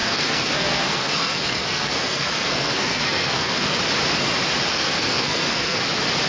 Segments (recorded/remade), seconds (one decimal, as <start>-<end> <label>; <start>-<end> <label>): 0.0-3.8 remade; 3.8-4.7 recorded; 4.7-5.8 remade; 5.8-6.3 recorded